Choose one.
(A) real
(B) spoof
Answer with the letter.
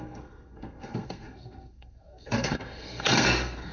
B